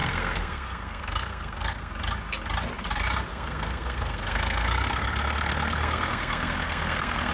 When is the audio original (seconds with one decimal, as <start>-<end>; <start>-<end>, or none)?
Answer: 1.9-3.3